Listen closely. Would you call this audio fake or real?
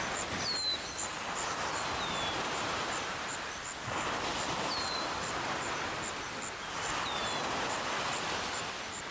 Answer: real